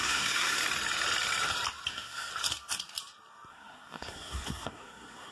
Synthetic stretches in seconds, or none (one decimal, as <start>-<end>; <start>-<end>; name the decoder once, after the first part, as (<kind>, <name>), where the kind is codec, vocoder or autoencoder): 0.0-0.6 (codec, SNAC); 1.9-2.3; 3.5-5.3